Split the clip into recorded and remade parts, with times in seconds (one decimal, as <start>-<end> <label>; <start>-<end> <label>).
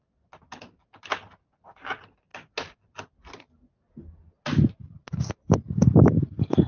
0.0-6.7 recorded